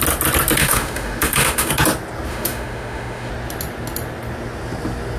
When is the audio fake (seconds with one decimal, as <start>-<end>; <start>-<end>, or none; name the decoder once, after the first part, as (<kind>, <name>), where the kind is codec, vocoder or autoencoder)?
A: 0.6-1.7 (autoencoder, DAC-VAE); 2.3-3.3

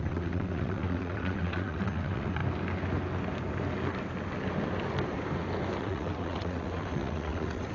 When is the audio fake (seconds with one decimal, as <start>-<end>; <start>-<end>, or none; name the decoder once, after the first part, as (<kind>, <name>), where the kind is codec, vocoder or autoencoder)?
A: 0.0-2.4 (vocoder, WaveNeXt); 5.8-7.7